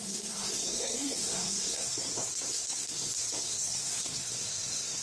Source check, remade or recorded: remade